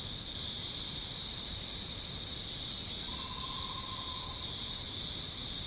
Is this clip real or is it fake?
real